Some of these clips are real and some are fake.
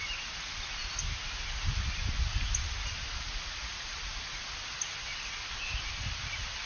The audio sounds real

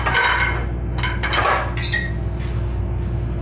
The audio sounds real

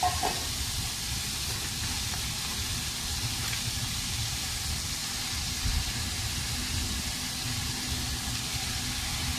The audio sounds real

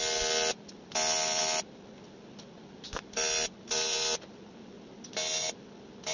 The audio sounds real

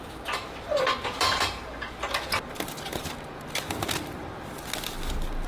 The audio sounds real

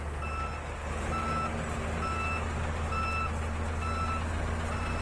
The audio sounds real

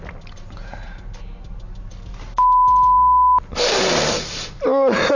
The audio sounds real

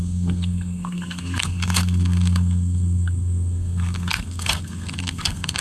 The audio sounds fake